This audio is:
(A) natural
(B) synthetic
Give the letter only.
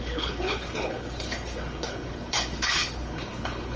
B